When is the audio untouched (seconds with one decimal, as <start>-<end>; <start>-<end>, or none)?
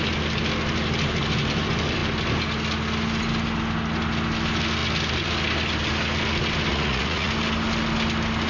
0.0-6.7; 7.3-8.5